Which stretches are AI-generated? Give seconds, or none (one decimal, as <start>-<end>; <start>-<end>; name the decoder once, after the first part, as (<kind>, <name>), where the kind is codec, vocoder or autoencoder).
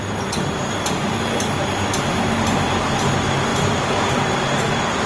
none